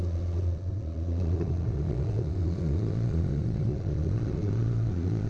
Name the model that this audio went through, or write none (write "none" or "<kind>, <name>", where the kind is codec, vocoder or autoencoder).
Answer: vocoder, Vocos